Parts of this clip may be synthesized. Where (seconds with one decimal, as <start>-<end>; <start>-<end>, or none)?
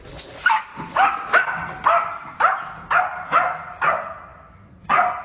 none